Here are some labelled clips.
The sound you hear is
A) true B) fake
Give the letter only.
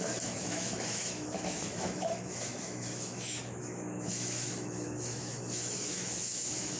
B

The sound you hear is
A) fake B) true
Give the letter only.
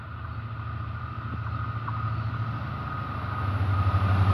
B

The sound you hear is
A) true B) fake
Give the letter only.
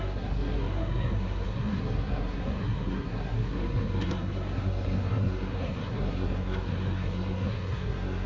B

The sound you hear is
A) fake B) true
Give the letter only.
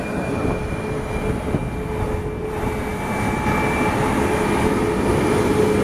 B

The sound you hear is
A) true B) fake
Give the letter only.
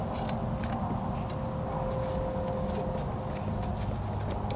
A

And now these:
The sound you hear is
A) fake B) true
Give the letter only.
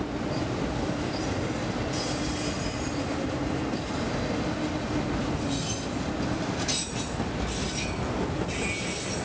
B